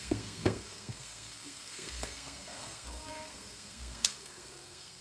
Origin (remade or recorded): remade